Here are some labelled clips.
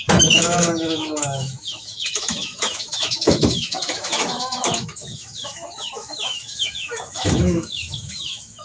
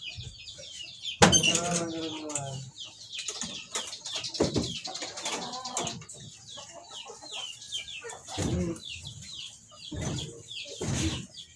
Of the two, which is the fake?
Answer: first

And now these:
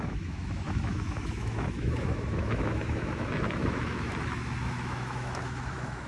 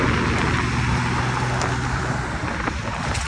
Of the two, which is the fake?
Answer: first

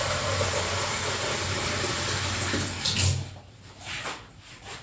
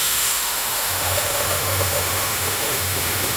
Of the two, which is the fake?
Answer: second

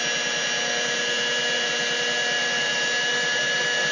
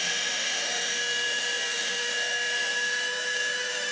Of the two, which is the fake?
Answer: second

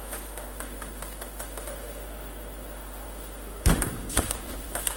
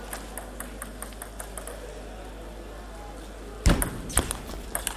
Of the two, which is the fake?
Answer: first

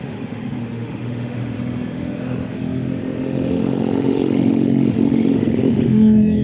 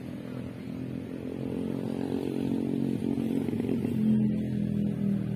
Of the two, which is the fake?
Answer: first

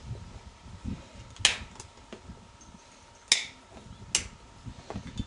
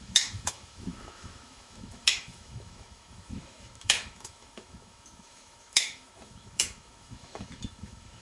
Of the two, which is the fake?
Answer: second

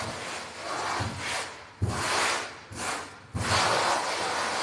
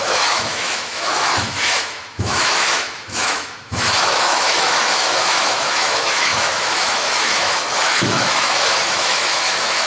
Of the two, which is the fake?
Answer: second